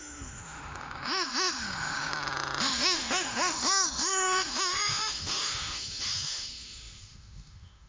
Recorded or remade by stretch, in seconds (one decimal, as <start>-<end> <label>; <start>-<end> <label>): 0.0-2.1 remade; 2.1-2.6 recorded; 2.6-7.9 remade